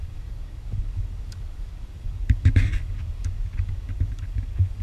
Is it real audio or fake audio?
fake